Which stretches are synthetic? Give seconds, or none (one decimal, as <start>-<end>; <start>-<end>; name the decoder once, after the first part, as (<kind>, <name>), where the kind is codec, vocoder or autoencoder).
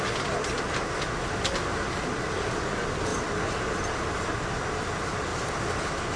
none